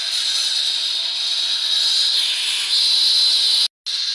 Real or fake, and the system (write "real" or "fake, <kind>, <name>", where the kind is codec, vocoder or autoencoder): real